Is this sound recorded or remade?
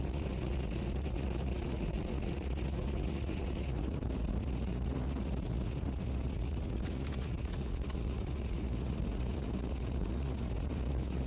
remade